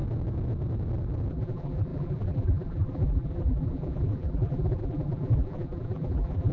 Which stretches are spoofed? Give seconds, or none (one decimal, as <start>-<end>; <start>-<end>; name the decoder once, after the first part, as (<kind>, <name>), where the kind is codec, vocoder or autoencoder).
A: 1.3-6.5 (vocoder, BigVGAN v2)